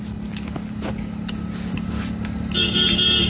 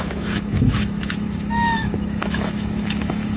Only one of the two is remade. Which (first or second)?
second